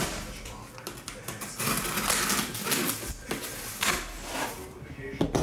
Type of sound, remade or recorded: recorded